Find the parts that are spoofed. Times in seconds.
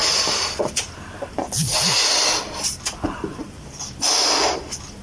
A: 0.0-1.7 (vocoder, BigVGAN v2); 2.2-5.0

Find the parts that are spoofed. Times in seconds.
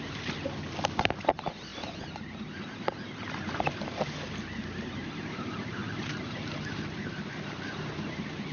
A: 5.0-8.5 (vocoder, BigVGAN v2)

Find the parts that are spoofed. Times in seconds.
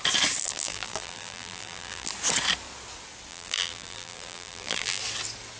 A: 0.4-2.1 (vocoder, BigVGAN v2); 3.3-5.0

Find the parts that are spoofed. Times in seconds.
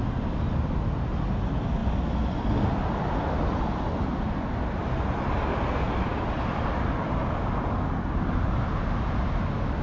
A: 6.1-7.3 (vocoder, BigVGAN v2)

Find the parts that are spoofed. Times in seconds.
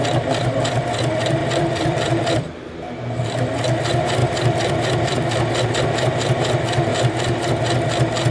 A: 1.4-2.7 (vocoder, BigVGAN v2); 4.2-5.7; 6.9-7.5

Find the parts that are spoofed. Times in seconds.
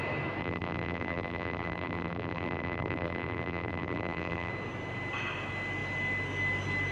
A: 0.4-4.5 (vocoder, BigVGAN v2)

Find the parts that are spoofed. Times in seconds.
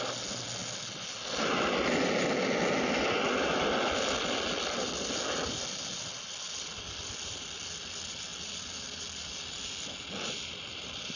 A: none